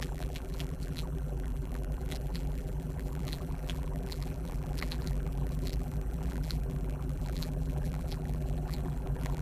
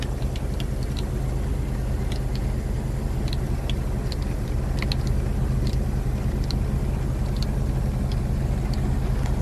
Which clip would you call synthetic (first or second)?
first